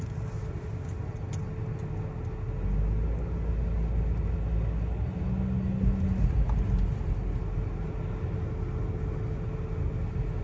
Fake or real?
real